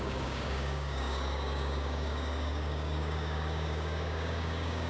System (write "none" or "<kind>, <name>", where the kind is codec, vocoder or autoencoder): codec, DAC